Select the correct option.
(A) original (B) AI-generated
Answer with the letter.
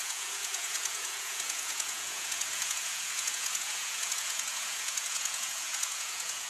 B